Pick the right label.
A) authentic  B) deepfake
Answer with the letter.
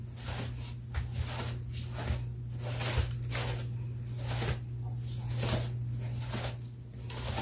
A